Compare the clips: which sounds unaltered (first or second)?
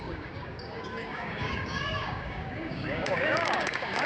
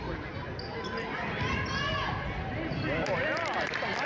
second